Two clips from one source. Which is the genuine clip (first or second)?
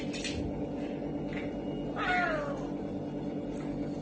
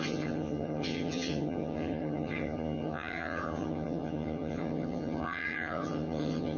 first